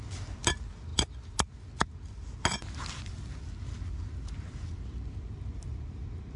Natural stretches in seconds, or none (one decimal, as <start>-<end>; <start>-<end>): 0.0-6.4

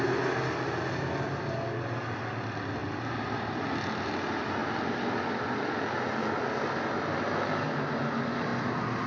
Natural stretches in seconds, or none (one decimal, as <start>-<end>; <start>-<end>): 0.0-9.1

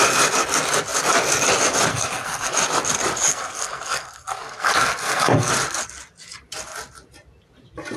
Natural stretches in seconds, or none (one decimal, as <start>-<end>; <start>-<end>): 0.0-1.9; 2.5-3.3; 5.5-8.0

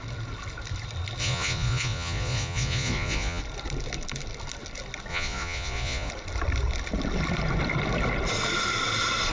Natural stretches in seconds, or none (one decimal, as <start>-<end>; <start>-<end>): 0.0-1.2; 3.4-5.1; 6.1-9.3

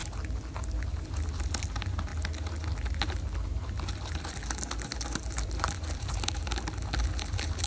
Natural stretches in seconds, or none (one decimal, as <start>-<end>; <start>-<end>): 0.0-7.7

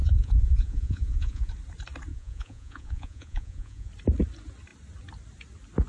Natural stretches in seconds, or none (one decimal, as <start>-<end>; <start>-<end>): 1.5-2.1; 3.9-5.9